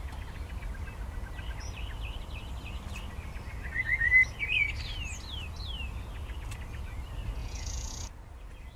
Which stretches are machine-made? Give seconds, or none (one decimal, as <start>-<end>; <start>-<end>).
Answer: 7.4-8.1